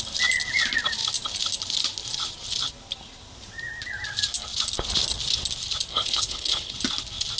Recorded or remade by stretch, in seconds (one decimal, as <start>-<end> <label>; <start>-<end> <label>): 0.0-5.9 recorded; 5.9-6.7 remade; 6.7-7.4 recorded